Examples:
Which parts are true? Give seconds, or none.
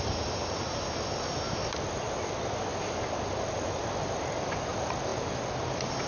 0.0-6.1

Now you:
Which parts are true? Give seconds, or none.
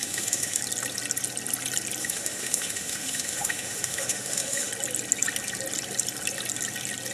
0.6-2.0; 4.7-7.1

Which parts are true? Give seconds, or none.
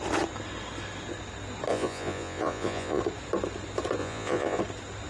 0.0-1.7; 3.0-4.0; 4.6-5.1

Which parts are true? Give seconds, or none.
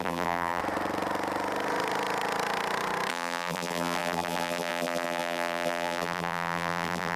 0.6-3.1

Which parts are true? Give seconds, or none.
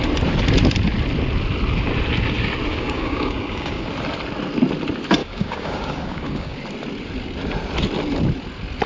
0.0-2.7; 3.9-5.2; 6.6-8.9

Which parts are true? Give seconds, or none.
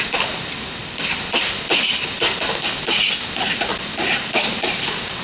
0.0-0.8; 3.9-5.2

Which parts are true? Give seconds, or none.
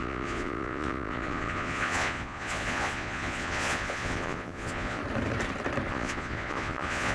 5.0-5.9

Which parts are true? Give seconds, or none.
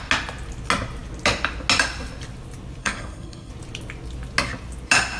0.0-2.8; 3.5-5.2